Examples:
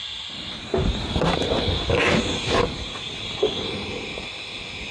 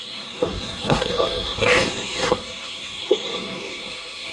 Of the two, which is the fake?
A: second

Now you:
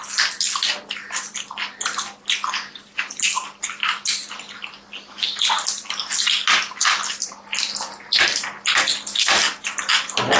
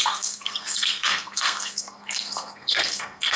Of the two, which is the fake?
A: second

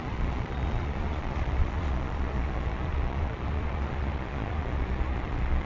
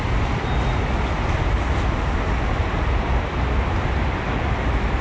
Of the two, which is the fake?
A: first